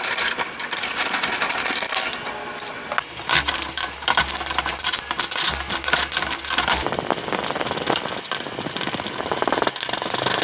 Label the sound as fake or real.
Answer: real